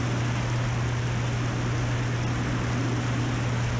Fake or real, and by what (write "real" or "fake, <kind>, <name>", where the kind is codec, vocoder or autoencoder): real